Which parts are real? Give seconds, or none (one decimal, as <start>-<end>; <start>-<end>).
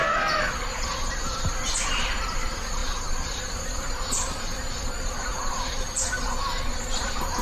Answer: 0.0-7.4